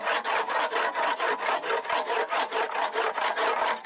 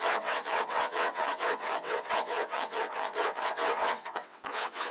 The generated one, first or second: second